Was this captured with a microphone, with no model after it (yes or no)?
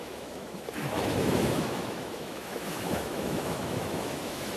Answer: no